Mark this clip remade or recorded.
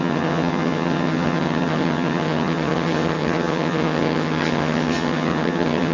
remade